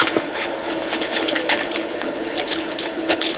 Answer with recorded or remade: remade